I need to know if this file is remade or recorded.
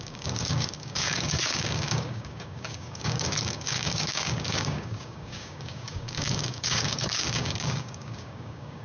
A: remade